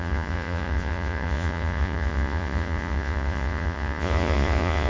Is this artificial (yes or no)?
yes